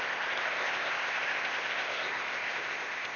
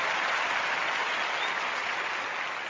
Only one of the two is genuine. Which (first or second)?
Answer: second